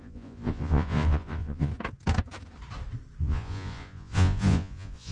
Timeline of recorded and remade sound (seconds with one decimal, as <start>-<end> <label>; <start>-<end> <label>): 0.0-1.7 remade; 1.7-3.2 recorded; 3.2-5.1 remade